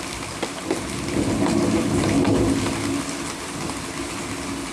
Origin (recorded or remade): recorded